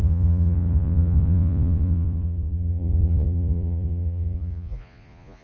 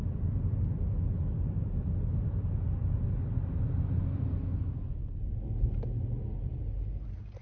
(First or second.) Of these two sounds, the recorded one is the second